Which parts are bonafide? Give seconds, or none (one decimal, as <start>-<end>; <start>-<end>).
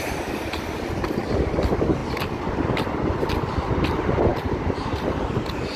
0.0-5.8